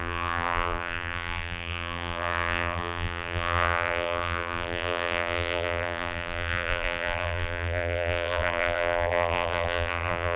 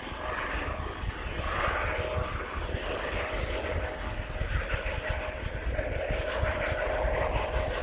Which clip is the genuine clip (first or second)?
second